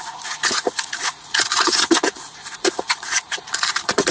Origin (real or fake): fake